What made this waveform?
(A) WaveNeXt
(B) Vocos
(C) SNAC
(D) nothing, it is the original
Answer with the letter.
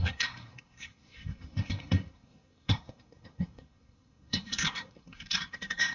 C